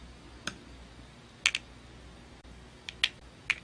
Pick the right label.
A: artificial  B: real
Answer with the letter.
B